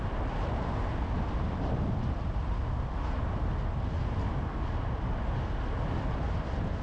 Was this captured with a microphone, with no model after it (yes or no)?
yes